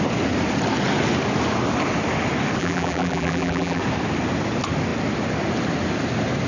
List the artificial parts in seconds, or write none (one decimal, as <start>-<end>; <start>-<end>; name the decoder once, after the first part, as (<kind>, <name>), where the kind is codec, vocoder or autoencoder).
2.6-3.8 (vocoder, BigVGAN v2)